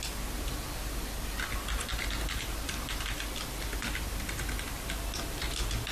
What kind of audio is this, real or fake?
real